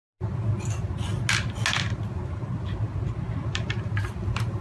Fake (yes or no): no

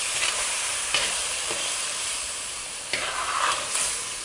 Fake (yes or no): yes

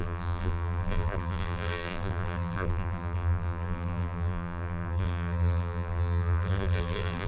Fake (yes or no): yes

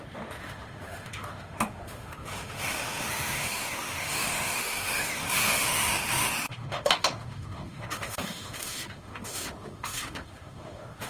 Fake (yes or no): yes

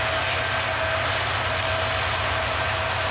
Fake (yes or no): no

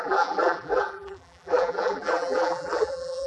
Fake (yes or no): yes